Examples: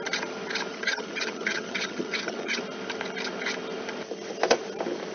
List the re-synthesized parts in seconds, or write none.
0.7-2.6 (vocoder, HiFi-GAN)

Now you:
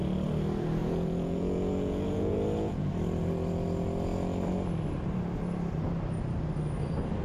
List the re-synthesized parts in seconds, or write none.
0.8-2.9 (vocoder, Vocos)

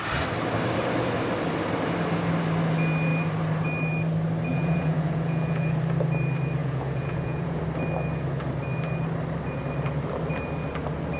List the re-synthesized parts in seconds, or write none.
4.5-5.8 (vocoder, Vocos); 6.6-7.6